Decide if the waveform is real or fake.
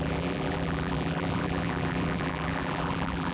fake